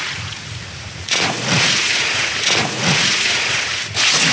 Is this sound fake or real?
fake